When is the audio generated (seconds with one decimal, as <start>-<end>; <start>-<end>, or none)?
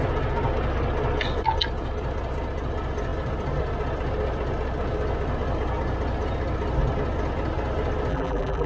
8.1-8.7